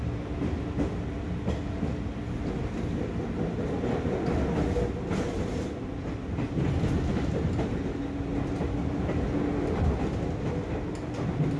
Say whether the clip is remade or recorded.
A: recorded